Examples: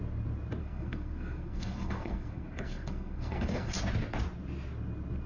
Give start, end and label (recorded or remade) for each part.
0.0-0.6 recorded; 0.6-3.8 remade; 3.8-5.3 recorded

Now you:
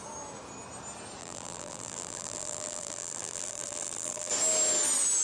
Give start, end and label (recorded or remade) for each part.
0.0-1.2 recorded; 1.2-4.3 remade; 4.3-5.2 recorded

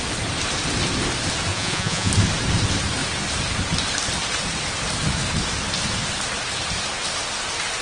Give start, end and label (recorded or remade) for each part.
0.0-1.5 recorded; 1.5-2.1 remade; 2.1-7.8 recorded

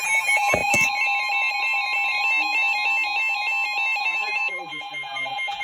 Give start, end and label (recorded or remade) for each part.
0.0-0.6 remade; 0.6-4.0 recorded; 4.0-5.6 remade

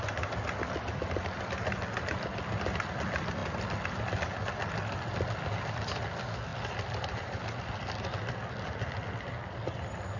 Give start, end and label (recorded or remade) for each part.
0.0-10.2 recorded

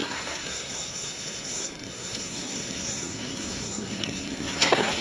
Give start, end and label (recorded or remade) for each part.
0.0-5.0 remade